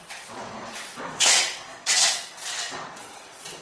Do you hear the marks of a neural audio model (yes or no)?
yes